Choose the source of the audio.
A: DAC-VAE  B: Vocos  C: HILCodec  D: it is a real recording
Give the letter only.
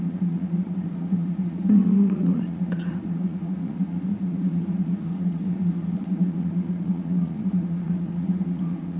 B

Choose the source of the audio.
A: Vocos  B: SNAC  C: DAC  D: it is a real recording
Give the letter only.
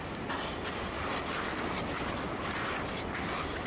D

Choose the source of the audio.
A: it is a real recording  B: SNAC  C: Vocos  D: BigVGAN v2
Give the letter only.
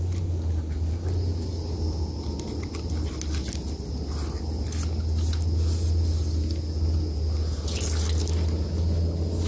A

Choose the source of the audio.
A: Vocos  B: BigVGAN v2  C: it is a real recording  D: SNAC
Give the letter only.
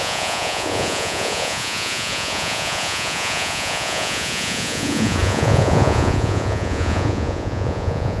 A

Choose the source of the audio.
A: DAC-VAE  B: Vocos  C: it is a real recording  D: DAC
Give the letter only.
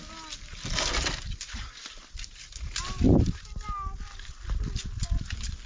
C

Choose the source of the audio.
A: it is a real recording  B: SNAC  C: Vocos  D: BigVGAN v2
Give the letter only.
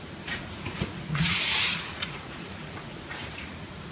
C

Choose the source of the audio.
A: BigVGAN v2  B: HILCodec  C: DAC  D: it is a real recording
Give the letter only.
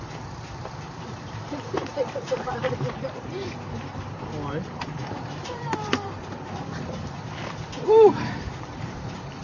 A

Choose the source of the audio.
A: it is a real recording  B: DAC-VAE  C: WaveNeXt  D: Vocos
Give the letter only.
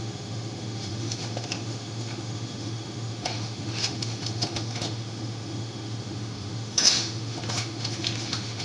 B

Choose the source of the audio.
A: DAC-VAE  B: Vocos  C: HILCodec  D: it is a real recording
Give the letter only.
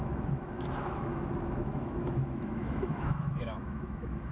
A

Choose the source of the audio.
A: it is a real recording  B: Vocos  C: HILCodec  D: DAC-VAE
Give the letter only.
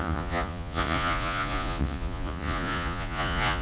B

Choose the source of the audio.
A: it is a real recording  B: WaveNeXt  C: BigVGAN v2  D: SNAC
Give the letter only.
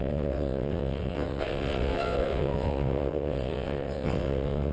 B